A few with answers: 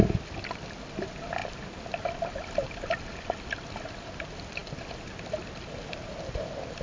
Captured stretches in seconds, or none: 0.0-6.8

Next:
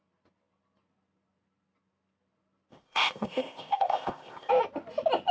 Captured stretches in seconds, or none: 0.0-2.7; 4.5-5.3

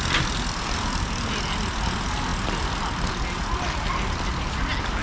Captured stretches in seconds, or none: 0.0-5.0

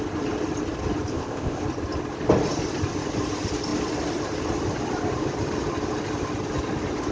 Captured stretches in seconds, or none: 0.0-1.1; 1.6-7.1

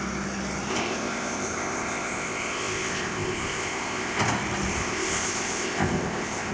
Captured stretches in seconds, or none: 0.0-0.7; 4.2-4.7

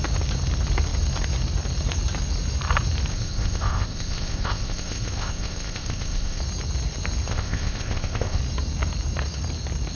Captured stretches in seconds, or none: 0.0-3.1; 6.4-7.3; 8.4-9.9

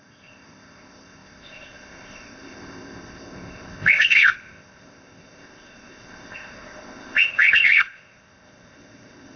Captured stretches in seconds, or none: none

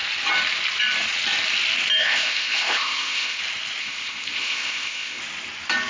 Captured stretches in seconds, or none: 0.0-2.0; 3.4-3.8; 5.2-5.9